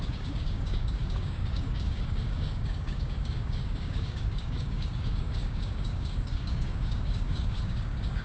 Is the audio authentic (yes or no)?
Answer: no